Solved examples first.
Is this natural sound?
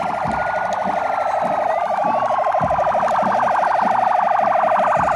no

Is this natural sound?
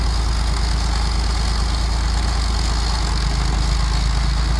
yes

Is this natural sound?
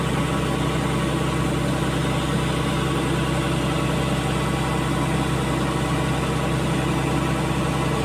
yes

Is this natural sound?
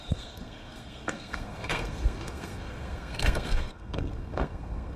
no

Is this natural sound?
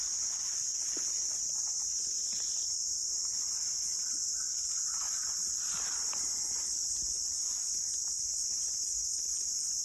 yes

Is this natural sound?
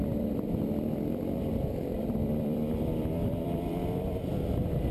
no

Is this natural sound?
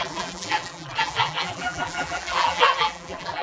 no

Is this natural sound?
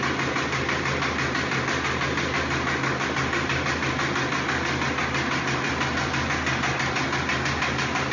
yes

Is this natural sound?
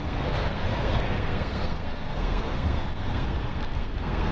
no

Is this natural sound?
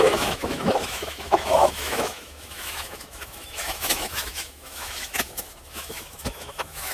no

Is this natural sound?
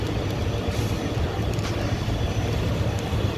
yes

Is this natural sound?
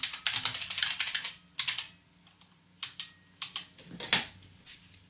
yes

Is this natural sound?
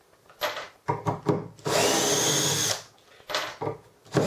yes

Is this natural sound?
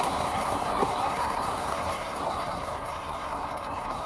no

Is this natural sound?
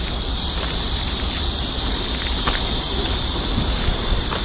no